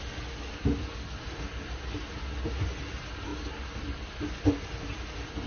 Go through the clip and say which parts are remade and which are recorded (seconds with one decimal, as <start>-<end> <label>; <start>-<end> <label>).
0.0-5.5 recorded